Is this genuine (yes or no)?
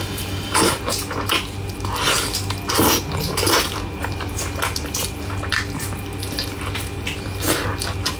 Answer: yes